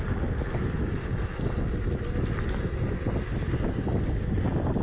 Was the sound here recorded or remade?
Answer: recorded